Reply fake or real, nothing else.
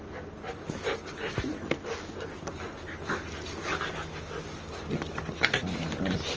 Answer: real